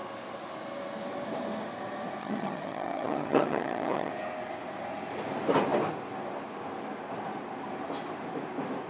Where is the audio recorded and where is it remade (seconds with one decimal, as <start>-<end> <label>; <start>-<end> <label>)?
0.0-2.2 recorded; 2.2-4.1 remade; 4.1-8.9 recorded